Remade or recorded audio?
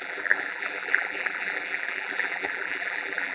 remade